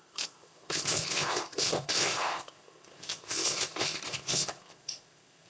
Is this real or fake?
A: fake